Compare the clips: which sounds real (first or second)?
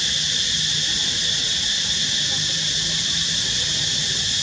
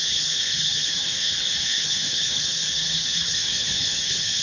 first